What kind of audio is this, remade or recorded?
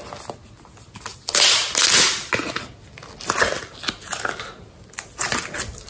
recorded